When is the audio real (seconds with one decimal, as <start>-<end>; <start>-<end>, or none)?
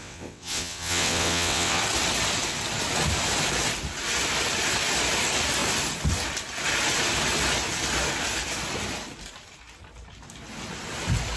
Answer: 1.8-11.4